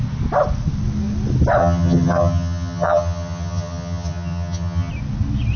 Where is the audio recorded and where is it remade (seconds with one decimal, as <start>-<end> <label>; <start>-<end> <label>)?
0.0-1.6 recorded; 1.6-4.9 remade; 4.9-5.6 recorded